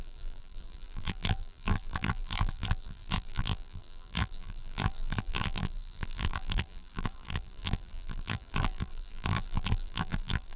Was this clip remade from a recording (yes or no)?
yes